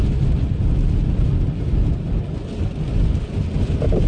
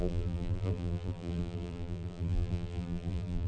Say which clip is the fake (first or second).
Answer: second